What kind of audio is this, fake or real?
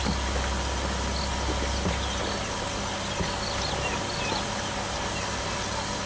real